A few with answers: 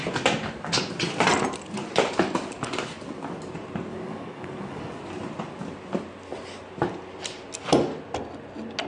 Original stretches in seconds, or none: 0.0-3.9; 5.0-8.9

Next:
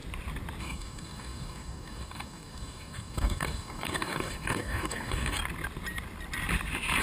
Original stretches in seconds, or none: 0.0-0.6; 5.4-7.0

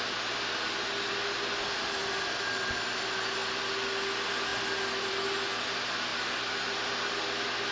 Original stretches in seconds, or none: 0.0-7.7